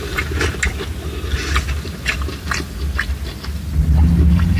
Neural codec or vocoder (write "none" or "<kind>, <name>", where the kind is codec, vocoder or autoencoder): none